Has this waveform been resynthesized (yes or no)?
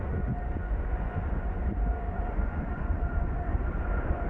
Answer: yes